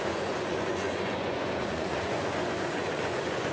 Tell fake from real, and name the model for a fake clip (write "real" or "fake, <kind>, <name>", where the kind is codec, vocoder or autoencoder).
fake, vocoder, Vocos